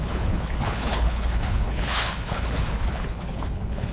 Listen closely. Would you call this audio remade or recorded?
remade